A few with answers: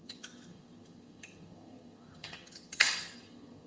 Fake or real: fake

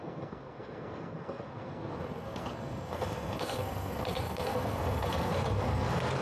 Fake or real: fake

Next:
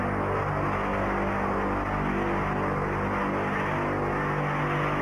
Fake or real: real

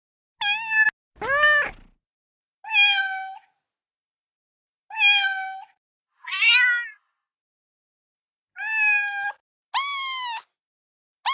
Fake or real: real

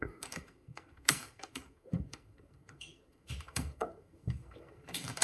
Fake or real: fake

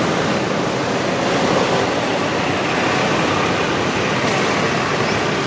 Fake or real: real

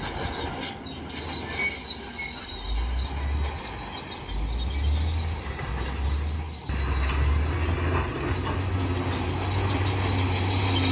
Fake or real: real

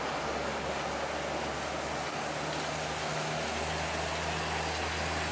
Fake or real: real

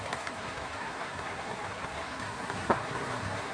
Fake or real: fake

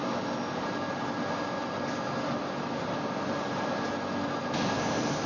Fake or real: real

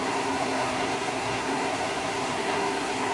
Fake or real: fake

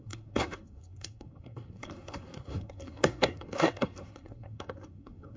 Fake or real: fake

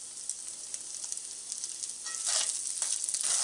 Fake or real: real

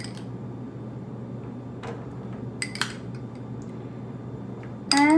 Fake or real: real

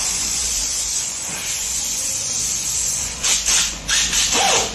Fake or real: fake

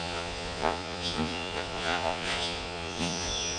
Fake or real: fake